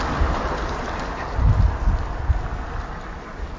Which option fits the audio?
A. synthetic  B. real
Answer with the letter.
B